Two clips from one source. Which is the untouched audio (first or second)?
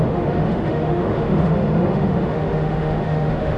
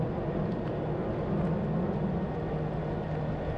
second